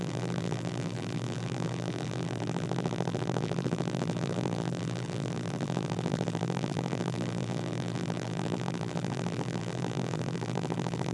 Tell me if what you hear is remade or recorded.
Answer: remade